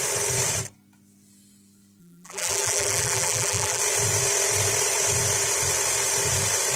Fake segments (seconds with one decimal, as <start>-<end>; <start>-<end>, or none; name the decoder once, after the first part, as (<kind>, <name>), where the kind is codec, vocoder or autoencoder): 2.0-3.8 (vocoder, BigVGAN v2)